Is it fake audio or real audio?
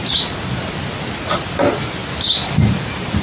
real